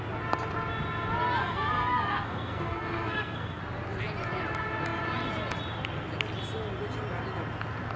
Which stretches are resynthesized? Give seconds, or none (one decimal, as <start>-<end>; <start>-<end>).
1.4-3.6